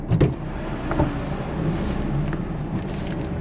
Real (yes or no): yes